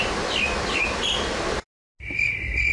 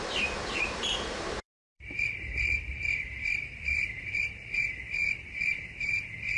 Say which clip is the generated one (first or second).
second